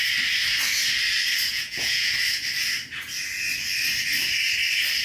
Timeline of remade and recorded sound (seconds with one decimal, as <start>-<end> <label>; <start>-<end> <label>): 0.0-1.5 recorded; 1.5-2.1 remade; 2.1-5.0 recorded

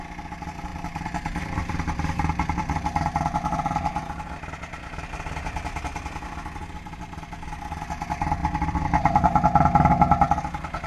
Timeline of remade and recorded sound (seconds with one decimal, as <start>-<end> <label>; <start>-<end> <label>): 0.0-0.7 recorded; 0.7-2.7 remade; 2.7-6.6 recorded; 6.6-7.6 remade; 7.6-8.4 recorded; 8.4-9.9 remade; 9.9-10.9 recorded

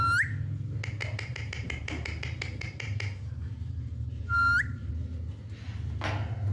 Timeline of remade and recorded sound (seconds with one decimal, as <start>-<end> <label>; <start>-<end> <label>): 0.0-1.0 recorded; 1.0-4.9 remade; 4.9-6.5 recorded

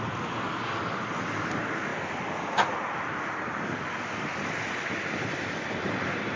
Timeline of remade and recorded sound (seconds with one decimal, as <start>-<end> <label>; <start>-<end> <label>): 0.0-6.4 recorded

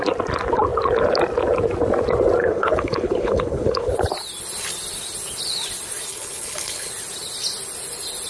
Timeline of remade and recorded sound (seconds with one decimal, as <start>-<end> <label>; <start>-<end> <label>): 0.0-2.4 recorded; 2.4-3.9 remade; 3.9-6.1 recorded; 6.1-6.9 remade; 6.9-8.3 recorded

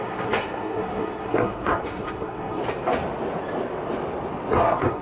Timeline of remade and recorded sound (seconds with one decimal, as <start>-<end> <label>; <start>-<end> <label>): 0.0-2.6 remade; 2.6-4.5 recorded; 4.5-5.0 remade

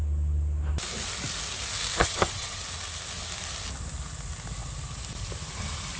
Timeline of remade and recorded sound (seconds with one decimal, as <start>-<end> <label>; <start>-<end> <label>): 0.0-2.0 recorded; 2.0-2.6 remade; 2.6-6.0 recorded

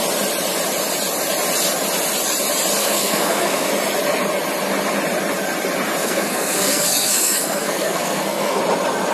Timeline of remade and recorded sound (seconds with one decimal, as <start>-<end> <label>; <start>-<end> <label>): 0.0-2.8 recorded; 2.8-3.7 remade; 3.7-6.0 recorded; 6.0-8.6 remade; 8.6-9.1 recorded